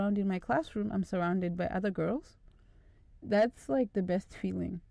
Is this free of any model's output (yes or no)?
yes